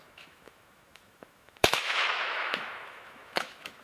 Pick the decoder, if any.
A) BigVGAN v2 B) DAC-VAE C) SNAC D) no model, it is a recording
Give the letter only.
B